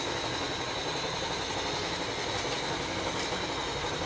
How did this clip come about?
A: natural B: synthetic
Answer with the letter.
A